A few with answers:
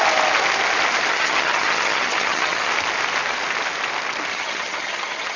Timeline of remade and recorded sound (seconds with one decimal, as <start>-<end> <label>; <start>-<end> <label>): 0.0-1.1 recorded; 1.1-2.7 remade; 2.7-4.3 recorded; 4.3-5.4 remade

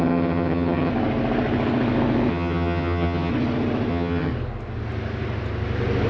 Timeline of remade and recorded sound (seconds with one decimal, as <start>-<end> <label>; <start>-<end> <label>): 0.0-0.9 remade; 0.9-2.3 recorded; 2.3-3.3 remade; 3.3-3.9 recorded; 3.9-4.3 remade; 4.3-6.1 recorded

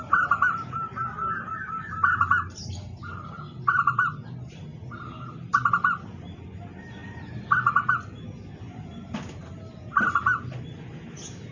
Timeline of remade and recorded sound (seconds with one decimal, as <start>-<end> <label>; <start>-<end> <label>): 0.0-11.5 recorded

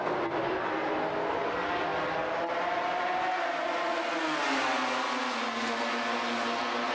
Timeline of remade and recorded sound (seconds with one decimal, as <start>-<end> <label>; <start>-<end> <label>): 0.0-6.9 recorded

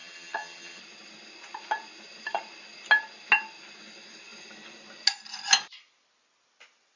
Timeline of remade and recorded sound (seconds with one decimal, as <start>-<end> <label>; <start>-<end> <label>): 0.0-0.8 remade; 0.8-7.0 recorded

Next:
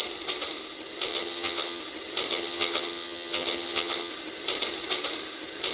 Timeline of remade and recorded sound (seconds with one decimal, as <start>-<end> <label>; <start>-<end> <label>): 0.0-1.1 recorded; 1.1-1.8 remade; 1.8-2.3 recorded; 2.3-4.1 remade; 4.1-5.7 recorded

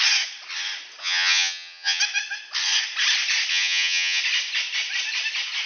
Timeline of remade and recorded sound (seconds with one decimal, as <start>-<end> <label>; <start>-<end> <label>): 0.0-1.0 recorded; 1.0-2.0 remade; 2.0-3.5 recorded; 3.5-4.2 remade; 4.2-5.7 recorded

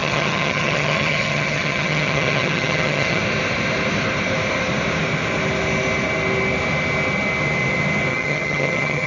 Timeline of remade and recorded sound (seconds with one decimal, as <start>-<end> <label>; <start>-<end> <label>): 0.0-3.2 remade; 3.2-8.1 recorded; 8.1-9.1 remade